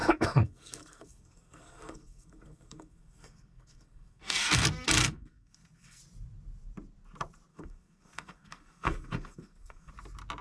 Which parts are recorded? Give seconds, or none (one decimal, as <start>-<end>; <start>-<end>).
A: 4.6-5.0; 6.0-7.5; 9.9-10.4